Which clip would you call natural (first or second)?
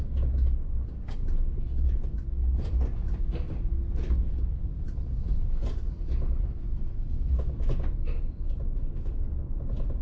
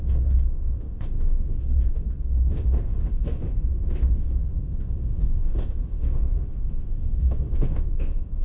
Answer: first